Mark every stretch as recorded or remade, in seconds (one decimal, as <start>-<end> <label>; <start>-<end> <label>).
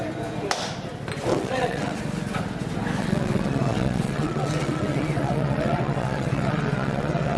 0.0-1.3 recorded; 1.3-2.0 remade; 2.0-3.0 recorded; 3.0-7.4 remade